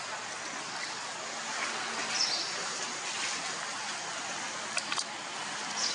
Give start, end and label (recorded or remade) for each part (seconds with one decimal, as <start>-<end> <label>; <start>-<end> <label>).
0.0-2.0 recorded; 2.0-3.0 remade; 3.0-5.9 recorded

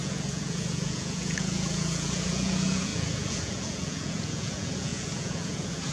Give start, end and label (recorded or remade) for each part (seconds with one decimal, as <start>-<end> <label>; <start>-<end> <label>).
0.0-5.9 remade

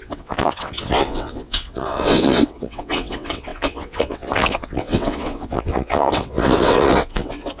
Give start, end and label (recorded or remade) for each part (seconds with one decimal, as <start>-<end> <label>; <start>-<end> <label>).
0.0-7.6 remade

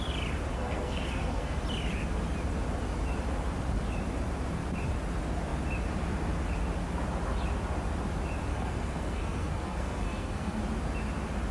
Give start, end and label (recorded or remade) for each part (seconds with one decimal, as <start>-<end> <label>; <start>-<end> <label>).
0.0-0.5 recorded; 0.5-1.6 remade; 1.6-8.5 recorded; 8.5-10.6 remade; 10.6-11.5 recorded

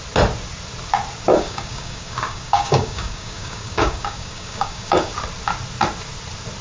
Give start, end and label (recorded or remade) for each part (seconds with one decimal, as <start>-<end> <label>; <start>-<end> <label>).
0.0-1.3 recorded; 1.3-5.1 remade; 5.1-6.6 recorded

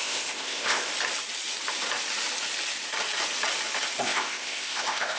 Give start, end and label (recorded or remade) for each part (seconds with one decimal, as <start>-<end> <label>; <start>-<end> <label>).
0.0-0.9 remade; 0.9-4.0 recorded; 4.0-5.2 remade